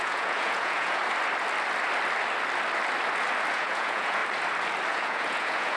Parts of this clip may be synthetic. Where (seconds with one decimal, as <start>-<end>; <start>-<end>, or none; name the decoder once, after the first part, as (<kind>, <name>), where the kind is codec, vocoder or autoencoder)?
0.0-1.0 (vocoder, Vocos); 3.5-4.2; 4.9-5.8